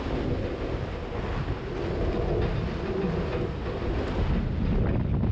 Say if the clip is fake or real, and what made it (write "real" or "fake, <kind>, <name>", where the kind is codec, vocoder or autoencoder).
real